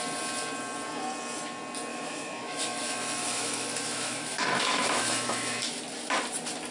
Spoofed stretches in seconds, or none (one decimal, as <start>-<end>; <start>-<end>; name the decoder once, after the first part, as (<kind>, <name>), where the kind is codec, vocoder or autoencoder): 1.9-5.8 (autoencoder, DAC-VAE)